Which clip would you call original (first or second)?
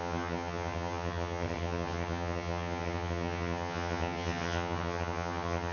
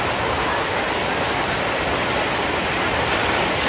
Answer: second